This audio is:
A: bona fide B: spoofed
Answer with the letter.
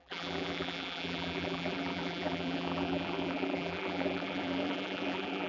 B